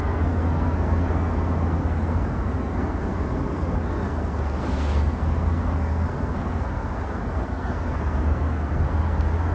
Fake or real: fake